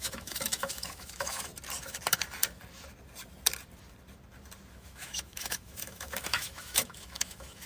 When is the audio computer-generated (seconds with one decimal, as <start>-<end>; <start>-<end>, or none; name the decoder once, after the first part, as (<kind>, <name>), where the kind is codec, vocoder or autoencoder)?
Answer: 0.0-1.5 (autoencoder, DAC-VAE); 4.7-7.7